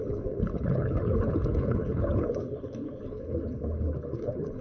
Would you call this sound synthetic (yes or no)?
yes